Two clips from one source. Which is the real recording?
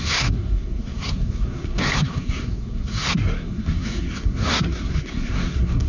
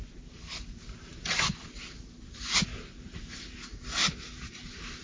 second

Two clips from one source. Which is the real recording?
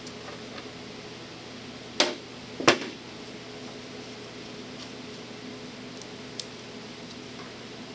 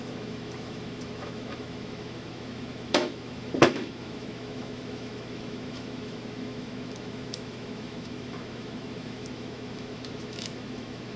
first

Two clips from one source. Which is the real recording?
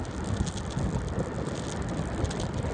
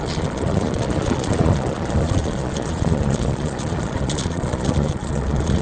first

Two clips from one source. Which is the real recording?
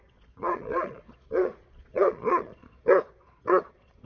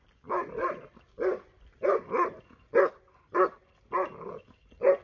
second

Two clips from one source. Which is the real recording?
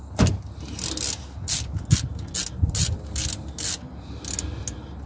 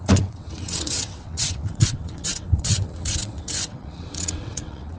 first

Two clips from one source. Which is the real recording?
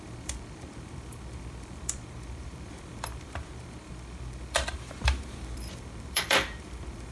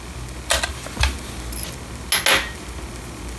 second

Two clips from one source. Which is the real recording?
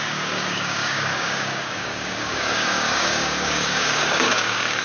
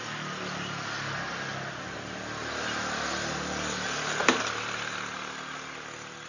second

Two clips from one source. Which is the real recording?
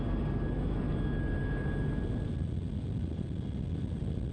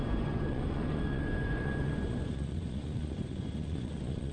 first